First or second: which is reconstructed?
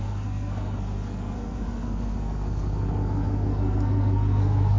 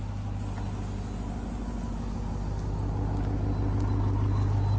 first